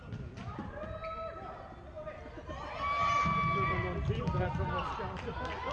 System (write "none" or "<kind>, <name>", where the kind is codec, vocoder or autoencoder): none